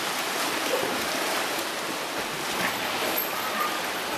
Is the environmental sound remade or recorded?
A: recorded